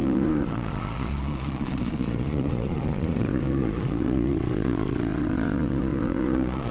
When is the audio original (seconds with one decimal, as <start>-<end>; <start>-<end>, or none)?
none